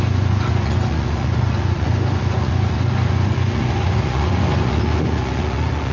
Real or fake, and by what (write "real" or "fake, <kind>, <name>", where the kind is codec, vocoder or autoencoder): fake, vocoder, Vocos